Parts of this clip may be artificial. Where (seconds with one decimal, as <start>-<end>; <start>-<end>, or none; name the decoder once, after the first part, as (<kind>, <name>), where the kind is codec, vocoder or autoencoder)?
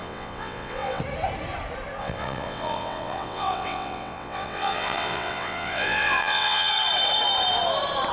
0.0-1.0 (vocoder, WaveNeXt); 2.0-6.7